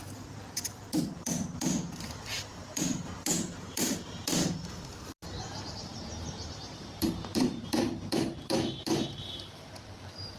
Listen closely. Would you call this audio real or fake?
fake